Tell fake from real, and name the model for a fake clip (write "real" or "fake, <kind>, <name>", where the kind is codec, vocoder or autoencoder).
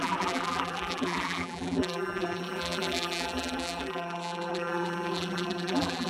fake, vocoder, BigVGAN v2